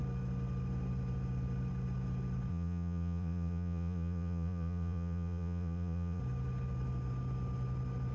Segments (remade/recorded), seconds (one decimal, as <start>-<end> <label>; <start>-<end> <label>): 0.0-2.5 recorded; 2.5-6.2 remade; 6.2-8.1 recorded